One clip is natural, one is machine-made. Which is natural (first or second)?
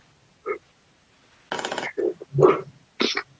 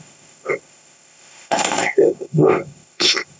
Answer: first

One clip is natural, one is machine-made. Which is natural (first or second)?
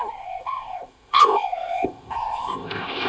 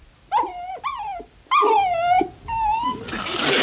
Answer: second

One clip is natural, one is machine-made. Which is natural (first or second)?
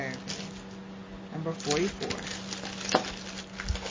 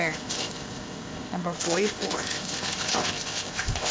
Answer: first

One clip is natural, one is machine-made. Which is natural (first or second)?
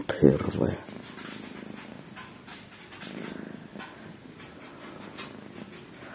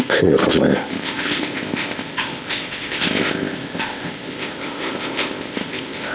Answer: first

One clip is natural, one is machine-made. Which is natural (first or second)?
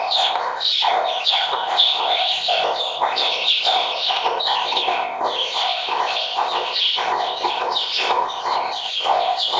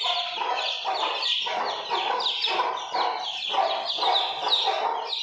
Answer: second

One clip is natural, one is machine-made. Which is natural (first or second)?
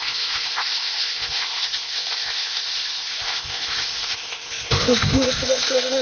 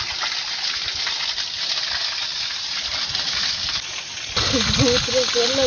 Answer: second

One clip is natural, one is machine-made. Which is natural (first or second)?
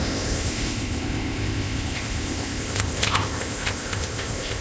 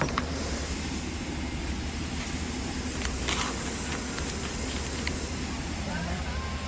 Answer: second